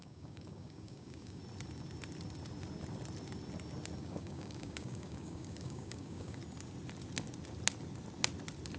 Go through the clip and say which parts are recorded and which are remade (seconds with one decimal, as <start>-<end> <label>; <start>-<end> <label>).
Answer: 0.0-1.4 remade; 1.4-4.0 recorded; 4.0-6.4 remade; 6.4-8.8 recorded